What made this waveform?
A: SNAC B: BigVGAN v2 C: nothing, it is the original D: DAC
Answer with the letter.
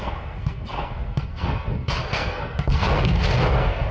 A